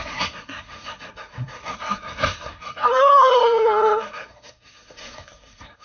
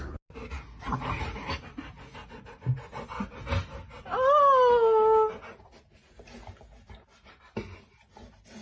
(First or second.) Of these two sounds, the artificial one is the first